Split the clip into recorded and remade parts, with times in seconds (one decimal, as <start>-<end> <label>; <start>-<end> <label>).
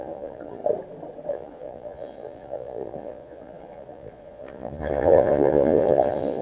0.0-0.6 remade; 0.6-1.3 recorded; 1.3-6.4 remade